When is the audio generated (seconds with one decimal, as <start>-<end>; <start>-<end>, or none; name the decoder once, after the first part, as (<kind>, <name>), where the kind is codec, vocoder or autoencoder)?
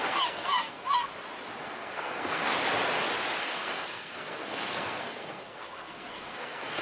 0.0-1.1 (codec, SNAC); 1.6-2.5; 3.4-6.8